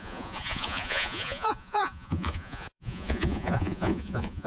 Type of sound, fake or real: fake